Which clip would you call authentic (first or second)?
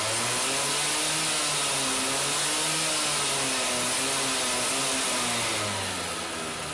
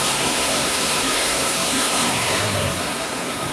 first